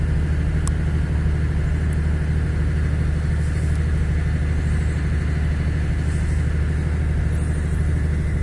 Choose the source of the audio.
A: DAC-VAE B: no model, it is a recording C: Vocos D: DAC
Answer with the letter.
B